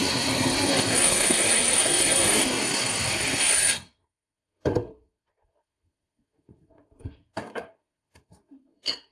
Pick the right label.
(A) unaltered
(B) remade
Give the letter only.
B